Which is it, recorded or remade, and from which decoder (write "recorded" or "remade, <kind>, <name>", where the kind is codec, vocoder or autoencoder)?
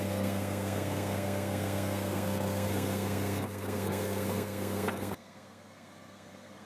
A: remade, codec, SNAC